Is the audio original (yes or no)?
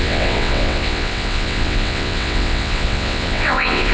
no